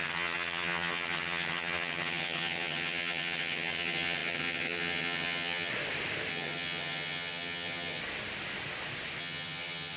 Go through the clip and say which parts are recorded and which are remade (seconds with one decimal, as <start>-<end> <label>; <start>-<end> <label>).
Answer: 0.0-5.7 remade; 5.7-6.3 recorded; 6.3-8.0 remade; 8.0-9.2 recorded; 9.2-10.0 remade

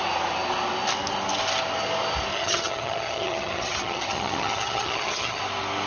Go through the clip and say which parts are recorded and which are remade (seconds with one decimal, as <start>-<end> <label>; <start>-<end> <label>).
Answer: 0.0-2.3 recorded; 2.3-5.4 remade; 5.4-5.9 recorded

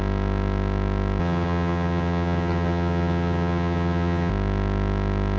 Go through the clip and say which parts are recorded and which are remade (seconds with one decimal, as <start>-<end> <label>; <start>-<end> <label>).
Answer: 0.0-1.2 recorded; 1.2-4.3 remade; 4.3-5.4 recorded

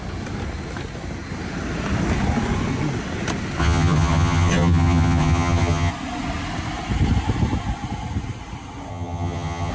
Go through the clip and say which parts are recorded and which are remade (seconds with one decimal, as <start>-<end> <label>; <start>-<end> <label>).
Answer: 0.0-3.6 recorded; 3.6-5.9 remade; 5.9-8.9 recorded; 8.9-9.7 remade